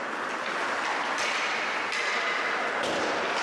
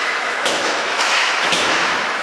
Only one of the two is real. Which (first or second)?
first